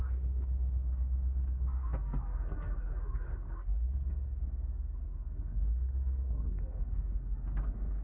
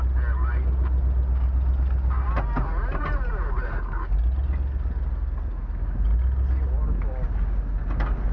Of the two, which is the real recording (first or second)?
second